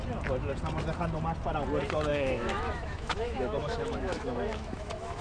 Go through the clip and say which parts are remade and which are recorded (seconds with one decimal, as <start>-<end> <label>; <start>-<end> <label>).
0.0-2.1 recorded; 2.1-5.2 remade